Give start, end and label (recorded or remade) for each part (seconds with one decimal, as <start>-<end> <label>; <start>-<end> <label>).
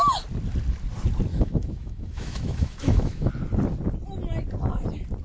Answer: 0.0-1.3 recorded; 1.3-3.3 remade; 3.3-5.2 recorded